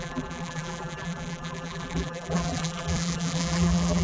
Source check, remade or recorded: remade